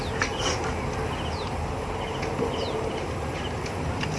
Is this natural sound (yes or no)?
yes